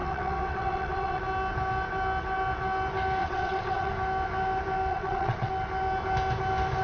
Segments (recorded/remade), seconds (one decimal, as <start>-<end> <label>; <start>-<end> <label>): 0.0-1.2 remade; 1.2-3.2 recorded; 3.2-3.9 remade; 3.9-4.9 recorded; 4.9-5.5 remade; 5.5-6.8 recorded